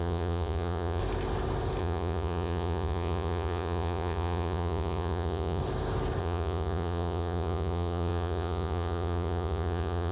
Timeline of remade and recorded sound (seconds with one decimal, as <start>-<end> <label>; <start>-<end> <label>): 0.0-1.0 remade; 1.0-1.8 recorded; 1.8-5.6 remade; 5.6-6.2 recorded; 6.2-10.1 remade